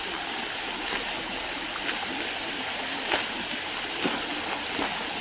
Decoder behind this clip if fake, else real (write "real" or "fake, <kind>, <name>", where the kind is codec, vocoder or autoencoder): real